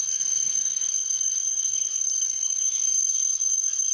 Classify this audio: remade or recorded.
remade